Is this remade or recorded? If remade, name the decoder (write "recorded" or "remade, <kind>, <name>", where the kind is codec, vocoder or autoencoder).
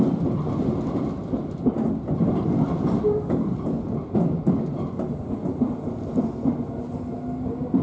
recorded